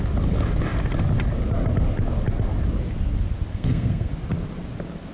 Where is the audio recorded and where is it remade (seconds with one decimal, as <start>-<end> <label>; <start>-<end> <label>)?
0.0-3.5 recorded; 3.5-4.1 remade; 4.1-5.1 recorded